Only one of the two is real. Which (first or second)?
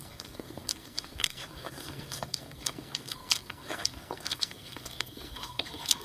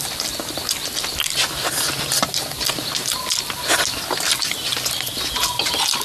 second